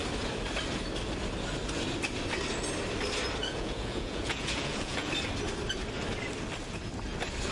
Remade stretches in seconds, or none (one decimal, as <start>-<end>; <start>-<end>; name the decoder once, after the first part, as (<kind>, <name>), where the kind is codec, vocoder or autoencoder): 3.4-5.1 (vocoder, Vocos)